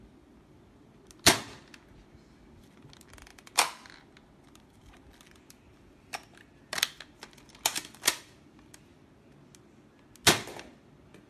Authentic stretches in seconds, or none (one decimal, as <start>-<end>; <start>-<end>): 0.0-11.3